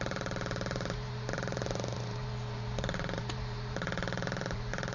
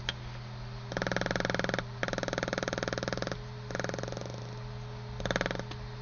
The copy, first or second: first